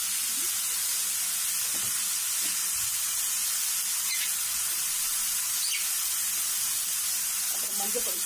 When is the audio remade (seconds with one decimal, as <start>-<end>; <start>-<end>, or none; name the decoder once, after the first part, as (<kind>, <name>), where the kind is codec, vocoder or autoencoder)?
none